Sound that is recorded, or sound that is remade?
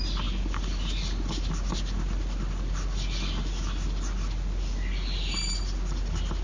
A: recorded